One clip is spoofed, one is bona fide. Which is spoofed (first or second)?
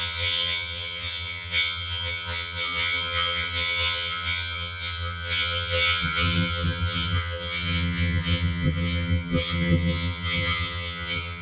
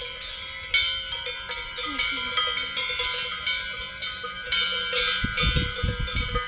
first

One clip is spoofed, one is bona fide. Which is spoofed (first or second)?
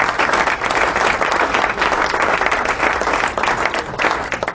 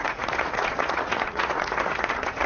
second